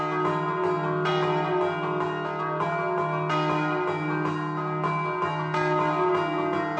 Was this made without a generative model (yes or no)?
yes